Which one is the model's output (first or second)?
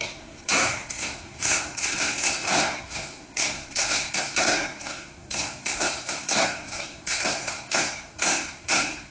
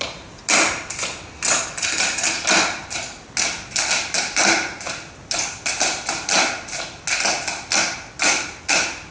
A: first